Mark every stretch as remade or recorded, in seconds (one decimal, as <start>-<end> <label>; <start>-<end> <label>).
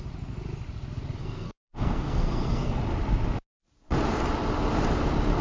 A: 0.0-1.2 recorded; 1.2-2.8 remade; 2.8-5.4 recorded